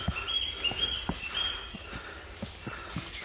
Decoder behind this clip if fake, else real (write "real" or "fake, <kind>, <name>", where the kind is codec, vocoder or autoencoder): real